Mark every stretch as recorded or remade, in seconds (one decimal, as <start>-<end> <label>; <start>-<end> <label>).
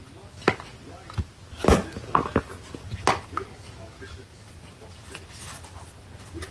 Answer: 0.0-6.5 recorded